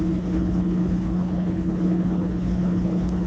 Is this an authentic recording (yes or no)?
no